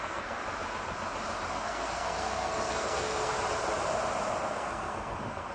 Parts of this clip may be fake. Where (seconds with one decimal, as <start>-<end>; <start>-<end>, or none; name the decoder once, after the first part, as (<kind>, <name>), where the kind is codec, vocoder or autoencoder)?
0.0-0.4 (codec, SNAC); 1.5-3.3; 4.5-5.5